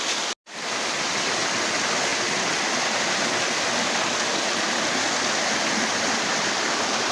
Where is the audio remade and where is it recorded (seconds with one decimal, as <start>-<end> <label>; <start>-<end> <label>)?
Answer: 0.0-7.1 recorded